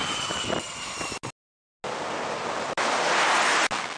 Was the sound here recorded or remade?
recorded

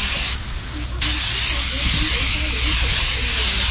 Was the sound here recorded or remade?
recorded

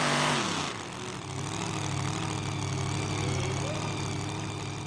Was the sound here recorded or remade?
recorded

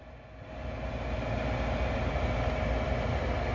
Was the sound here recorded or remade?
recorded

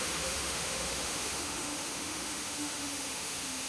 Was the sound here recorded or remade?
remade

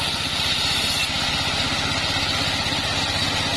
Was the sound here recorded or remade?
recorded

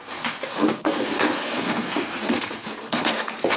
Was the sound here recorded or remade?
remade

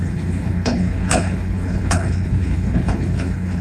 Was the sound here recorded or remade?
remade